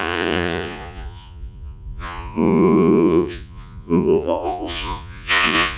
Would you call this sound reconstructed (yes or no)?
yes